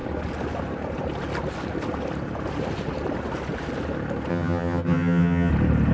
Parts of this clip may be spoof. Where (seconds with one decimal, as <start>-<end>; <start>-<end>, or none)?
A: 4.3-5.5